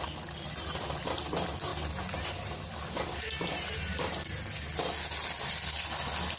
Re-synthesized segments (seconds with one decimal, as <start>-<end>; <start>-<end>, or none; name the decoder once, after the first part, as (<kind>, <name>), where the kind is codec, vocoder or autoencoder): none